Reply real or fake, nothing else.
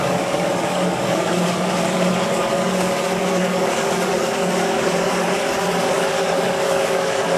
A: fake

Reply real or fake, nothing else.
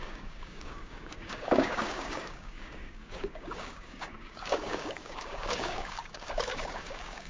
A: fake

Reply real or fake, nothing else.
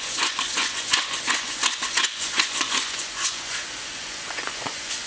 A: fake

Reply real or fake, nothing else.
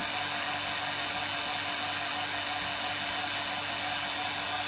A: real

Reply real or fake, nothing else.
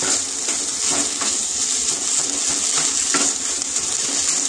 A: real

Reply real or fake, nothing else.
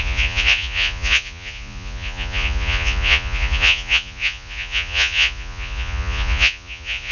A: fake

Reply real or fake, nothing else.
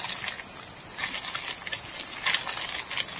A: real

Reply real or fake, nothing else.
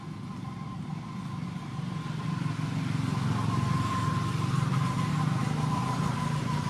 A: real